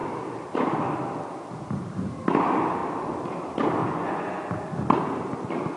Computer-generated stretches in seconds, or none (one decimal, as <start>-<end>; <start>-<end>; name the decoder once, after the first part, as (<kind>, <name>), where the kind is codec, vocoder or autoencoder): 3.8-4.5 (vocoder, Vocos)